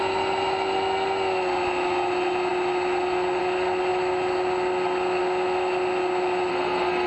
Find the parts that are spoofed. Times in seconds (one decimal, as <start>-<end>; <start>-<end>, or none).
6.5-7.1